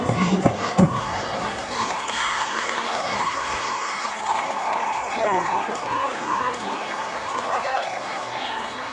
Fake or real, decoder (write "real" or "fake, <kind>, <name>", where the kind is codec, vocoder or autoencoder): fake, codec, SNAC